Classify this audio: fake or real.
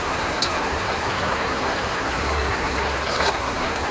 fake